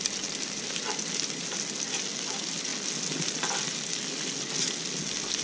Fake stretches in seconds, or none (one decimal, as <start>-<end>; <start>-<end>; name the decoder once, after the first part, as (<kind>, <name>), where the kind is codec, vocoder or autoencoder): none